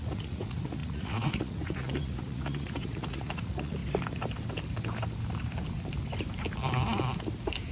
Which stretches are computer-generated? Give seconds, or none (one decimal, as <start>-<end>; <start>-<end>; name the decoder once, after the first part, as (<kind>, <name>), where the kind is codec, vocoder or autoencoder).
0.0-3.8 (vocoder, Vocos)